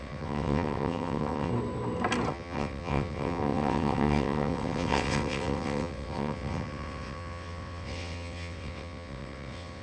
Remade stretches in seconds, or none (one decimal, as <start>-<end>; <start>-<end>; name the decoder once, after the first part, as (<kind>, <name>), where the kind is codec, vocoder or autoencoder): 0.0-1.5 (vocoder, WaveNeXt); 2.3-9.8

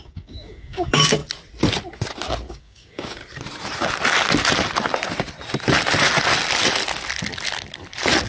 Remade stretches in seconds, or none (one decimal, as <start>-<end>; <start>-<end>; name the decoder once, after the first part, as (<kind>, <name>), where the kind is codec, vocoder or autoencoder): 0.0-1.2 (codec, DAC); 2.5-3.2